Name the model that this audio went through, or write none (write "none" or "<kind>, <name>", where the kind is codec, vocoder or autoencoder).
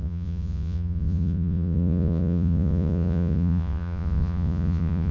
vocoder, Vocos